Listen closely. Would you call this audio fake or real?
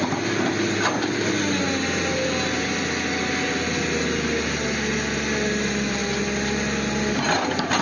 real